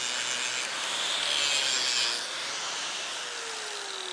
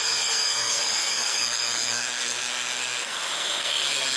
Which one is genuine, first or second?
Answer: first